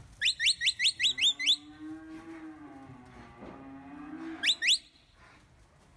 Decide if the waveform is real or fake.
real